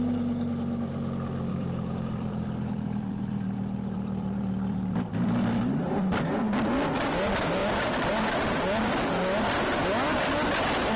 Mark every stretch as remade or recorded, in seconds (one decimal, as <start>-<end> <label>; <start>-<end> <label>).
0.0-1.5 recorded; 1.5-6.2 remade; 6.2-11.0 recorded